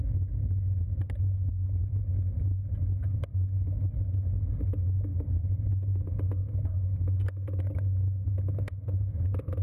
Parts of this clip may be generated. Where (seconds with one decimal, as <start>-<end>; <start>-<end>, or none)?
5.1-5.7